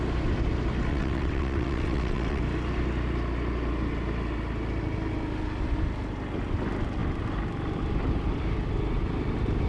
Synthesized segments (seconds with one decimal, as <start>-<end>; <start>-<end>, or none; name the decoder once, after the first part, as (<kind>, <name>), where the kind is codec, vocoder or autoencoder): 0.9-2.4 (vocoder, WaveNeXt)

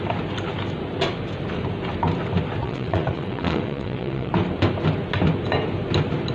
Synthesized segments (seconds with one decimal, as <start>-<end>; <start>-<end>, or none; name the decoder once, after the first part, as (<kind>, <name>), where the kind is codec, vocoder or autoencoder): 2.6-4.3 (vocoder, WaveNeXt)

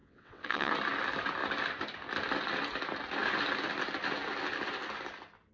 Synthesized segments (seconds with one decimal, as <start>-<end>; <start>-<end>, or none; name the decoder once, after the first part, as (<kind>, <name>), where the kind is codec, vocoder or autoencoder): 0.0-0.7 (vocoder, WaveNeXt)

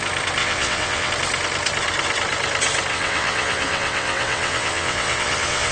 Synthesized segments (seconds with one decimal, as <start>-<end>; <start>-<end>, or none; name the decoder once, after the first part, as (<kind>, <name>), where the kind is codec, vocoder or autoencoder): 0.4-1.1 (vocoder, WaveNeXt); 2.9-5.7

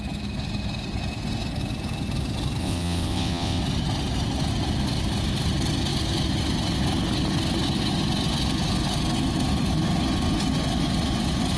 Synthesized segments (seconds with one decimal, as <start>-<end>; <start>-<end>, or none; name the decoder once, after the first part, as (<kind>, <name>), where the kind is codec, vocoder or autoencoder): 2.6-3.6 (vocoder, WaveNeXt)

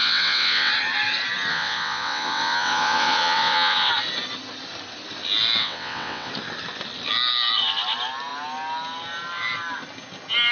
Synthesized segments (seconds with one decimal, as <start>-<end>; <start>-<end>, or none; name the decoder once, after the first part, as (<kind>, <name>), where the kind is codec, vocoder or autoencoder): 0.0-0.7 (vocoder, WaveNeXt); 1.5-3.9; 5.6-6.3

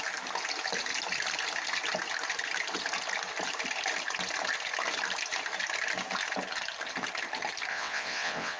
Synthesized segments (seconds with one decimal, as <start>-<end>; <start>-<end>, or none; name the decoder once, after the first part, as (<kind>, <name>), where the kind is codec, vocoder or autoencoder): 7.7-8.6 (vocoder, WaveNeXt)

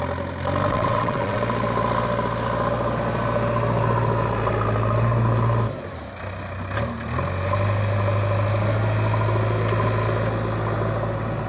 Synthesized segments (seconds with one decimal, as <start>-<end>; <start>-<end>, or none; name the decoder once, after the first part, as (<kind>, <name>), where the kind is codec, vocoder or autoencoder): 0.7-1.4 (vocoder, WaveNeXt)